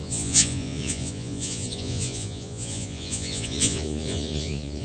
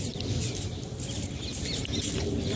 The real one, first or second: second